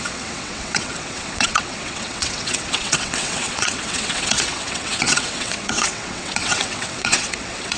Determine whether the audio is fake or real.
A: fake